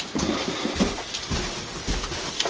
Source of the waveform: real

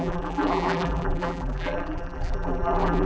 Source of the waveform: fake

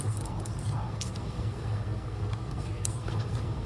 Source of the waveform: fake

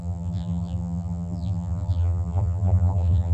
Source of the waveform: fake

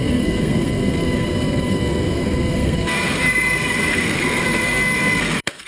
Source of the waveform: fake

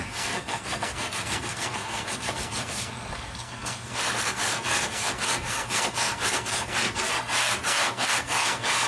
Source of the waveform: fake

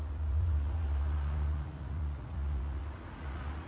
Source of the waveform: fake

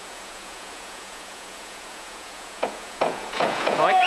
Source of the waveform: fake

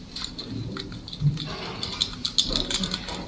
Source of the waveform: real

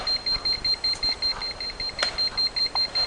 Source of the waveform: real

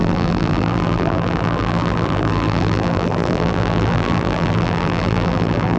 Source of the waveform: fake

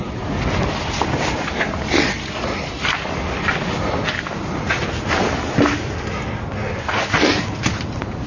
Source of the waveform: real